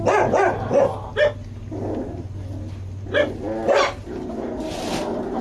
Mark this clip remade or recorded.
recorded